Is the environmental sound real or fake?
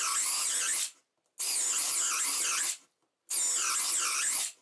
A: real